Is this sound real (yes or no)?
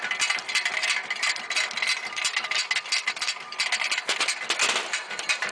yes